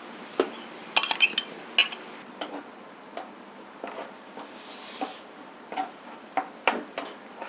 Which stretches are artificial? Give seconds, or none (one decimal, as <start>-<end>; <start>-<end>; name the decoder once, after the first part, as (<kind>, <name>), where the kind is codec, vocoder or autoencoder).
none